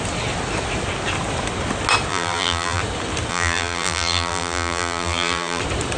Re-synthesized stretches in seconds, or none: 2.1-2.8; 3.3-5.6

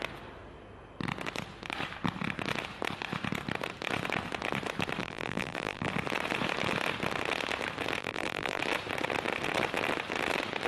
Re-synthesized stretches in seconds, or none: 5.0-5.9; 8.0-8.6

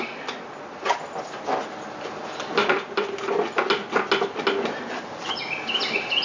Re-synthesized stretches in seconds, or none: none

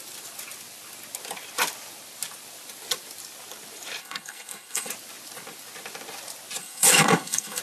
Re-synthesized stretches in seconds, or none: 4.0-4.9; 6.6-7.6